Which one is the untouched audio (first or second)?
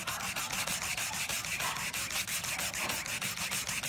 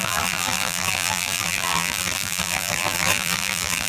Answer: first